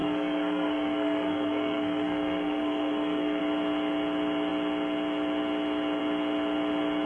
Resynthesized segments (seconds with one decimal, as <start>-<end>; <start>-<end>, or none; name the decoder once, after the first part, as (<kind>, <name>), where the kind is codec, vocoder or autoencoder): 0.0-3.4 (codec, SNAC)